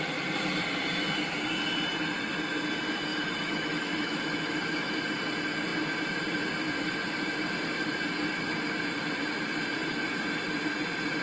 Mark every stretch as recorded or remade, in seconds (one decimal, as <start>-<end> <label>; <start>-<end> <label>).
0.0-3.1 recorded; 3.1-5.0 remade; 5.0-11.2 recorded